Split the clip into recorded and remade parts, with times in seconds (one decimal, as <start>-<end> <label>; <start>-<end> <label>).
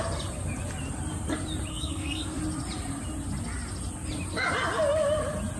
0.0-1.7 recorded; 1.7-2.4 remade; 2.4-5.6 recorded